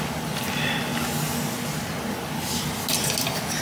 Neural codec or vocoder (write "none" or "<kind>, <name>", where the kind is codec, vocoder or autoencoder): none